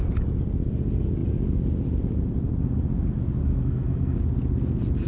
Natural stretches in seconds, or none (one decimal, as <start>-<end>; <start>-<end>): 0.0-3.4; 4.2-5.1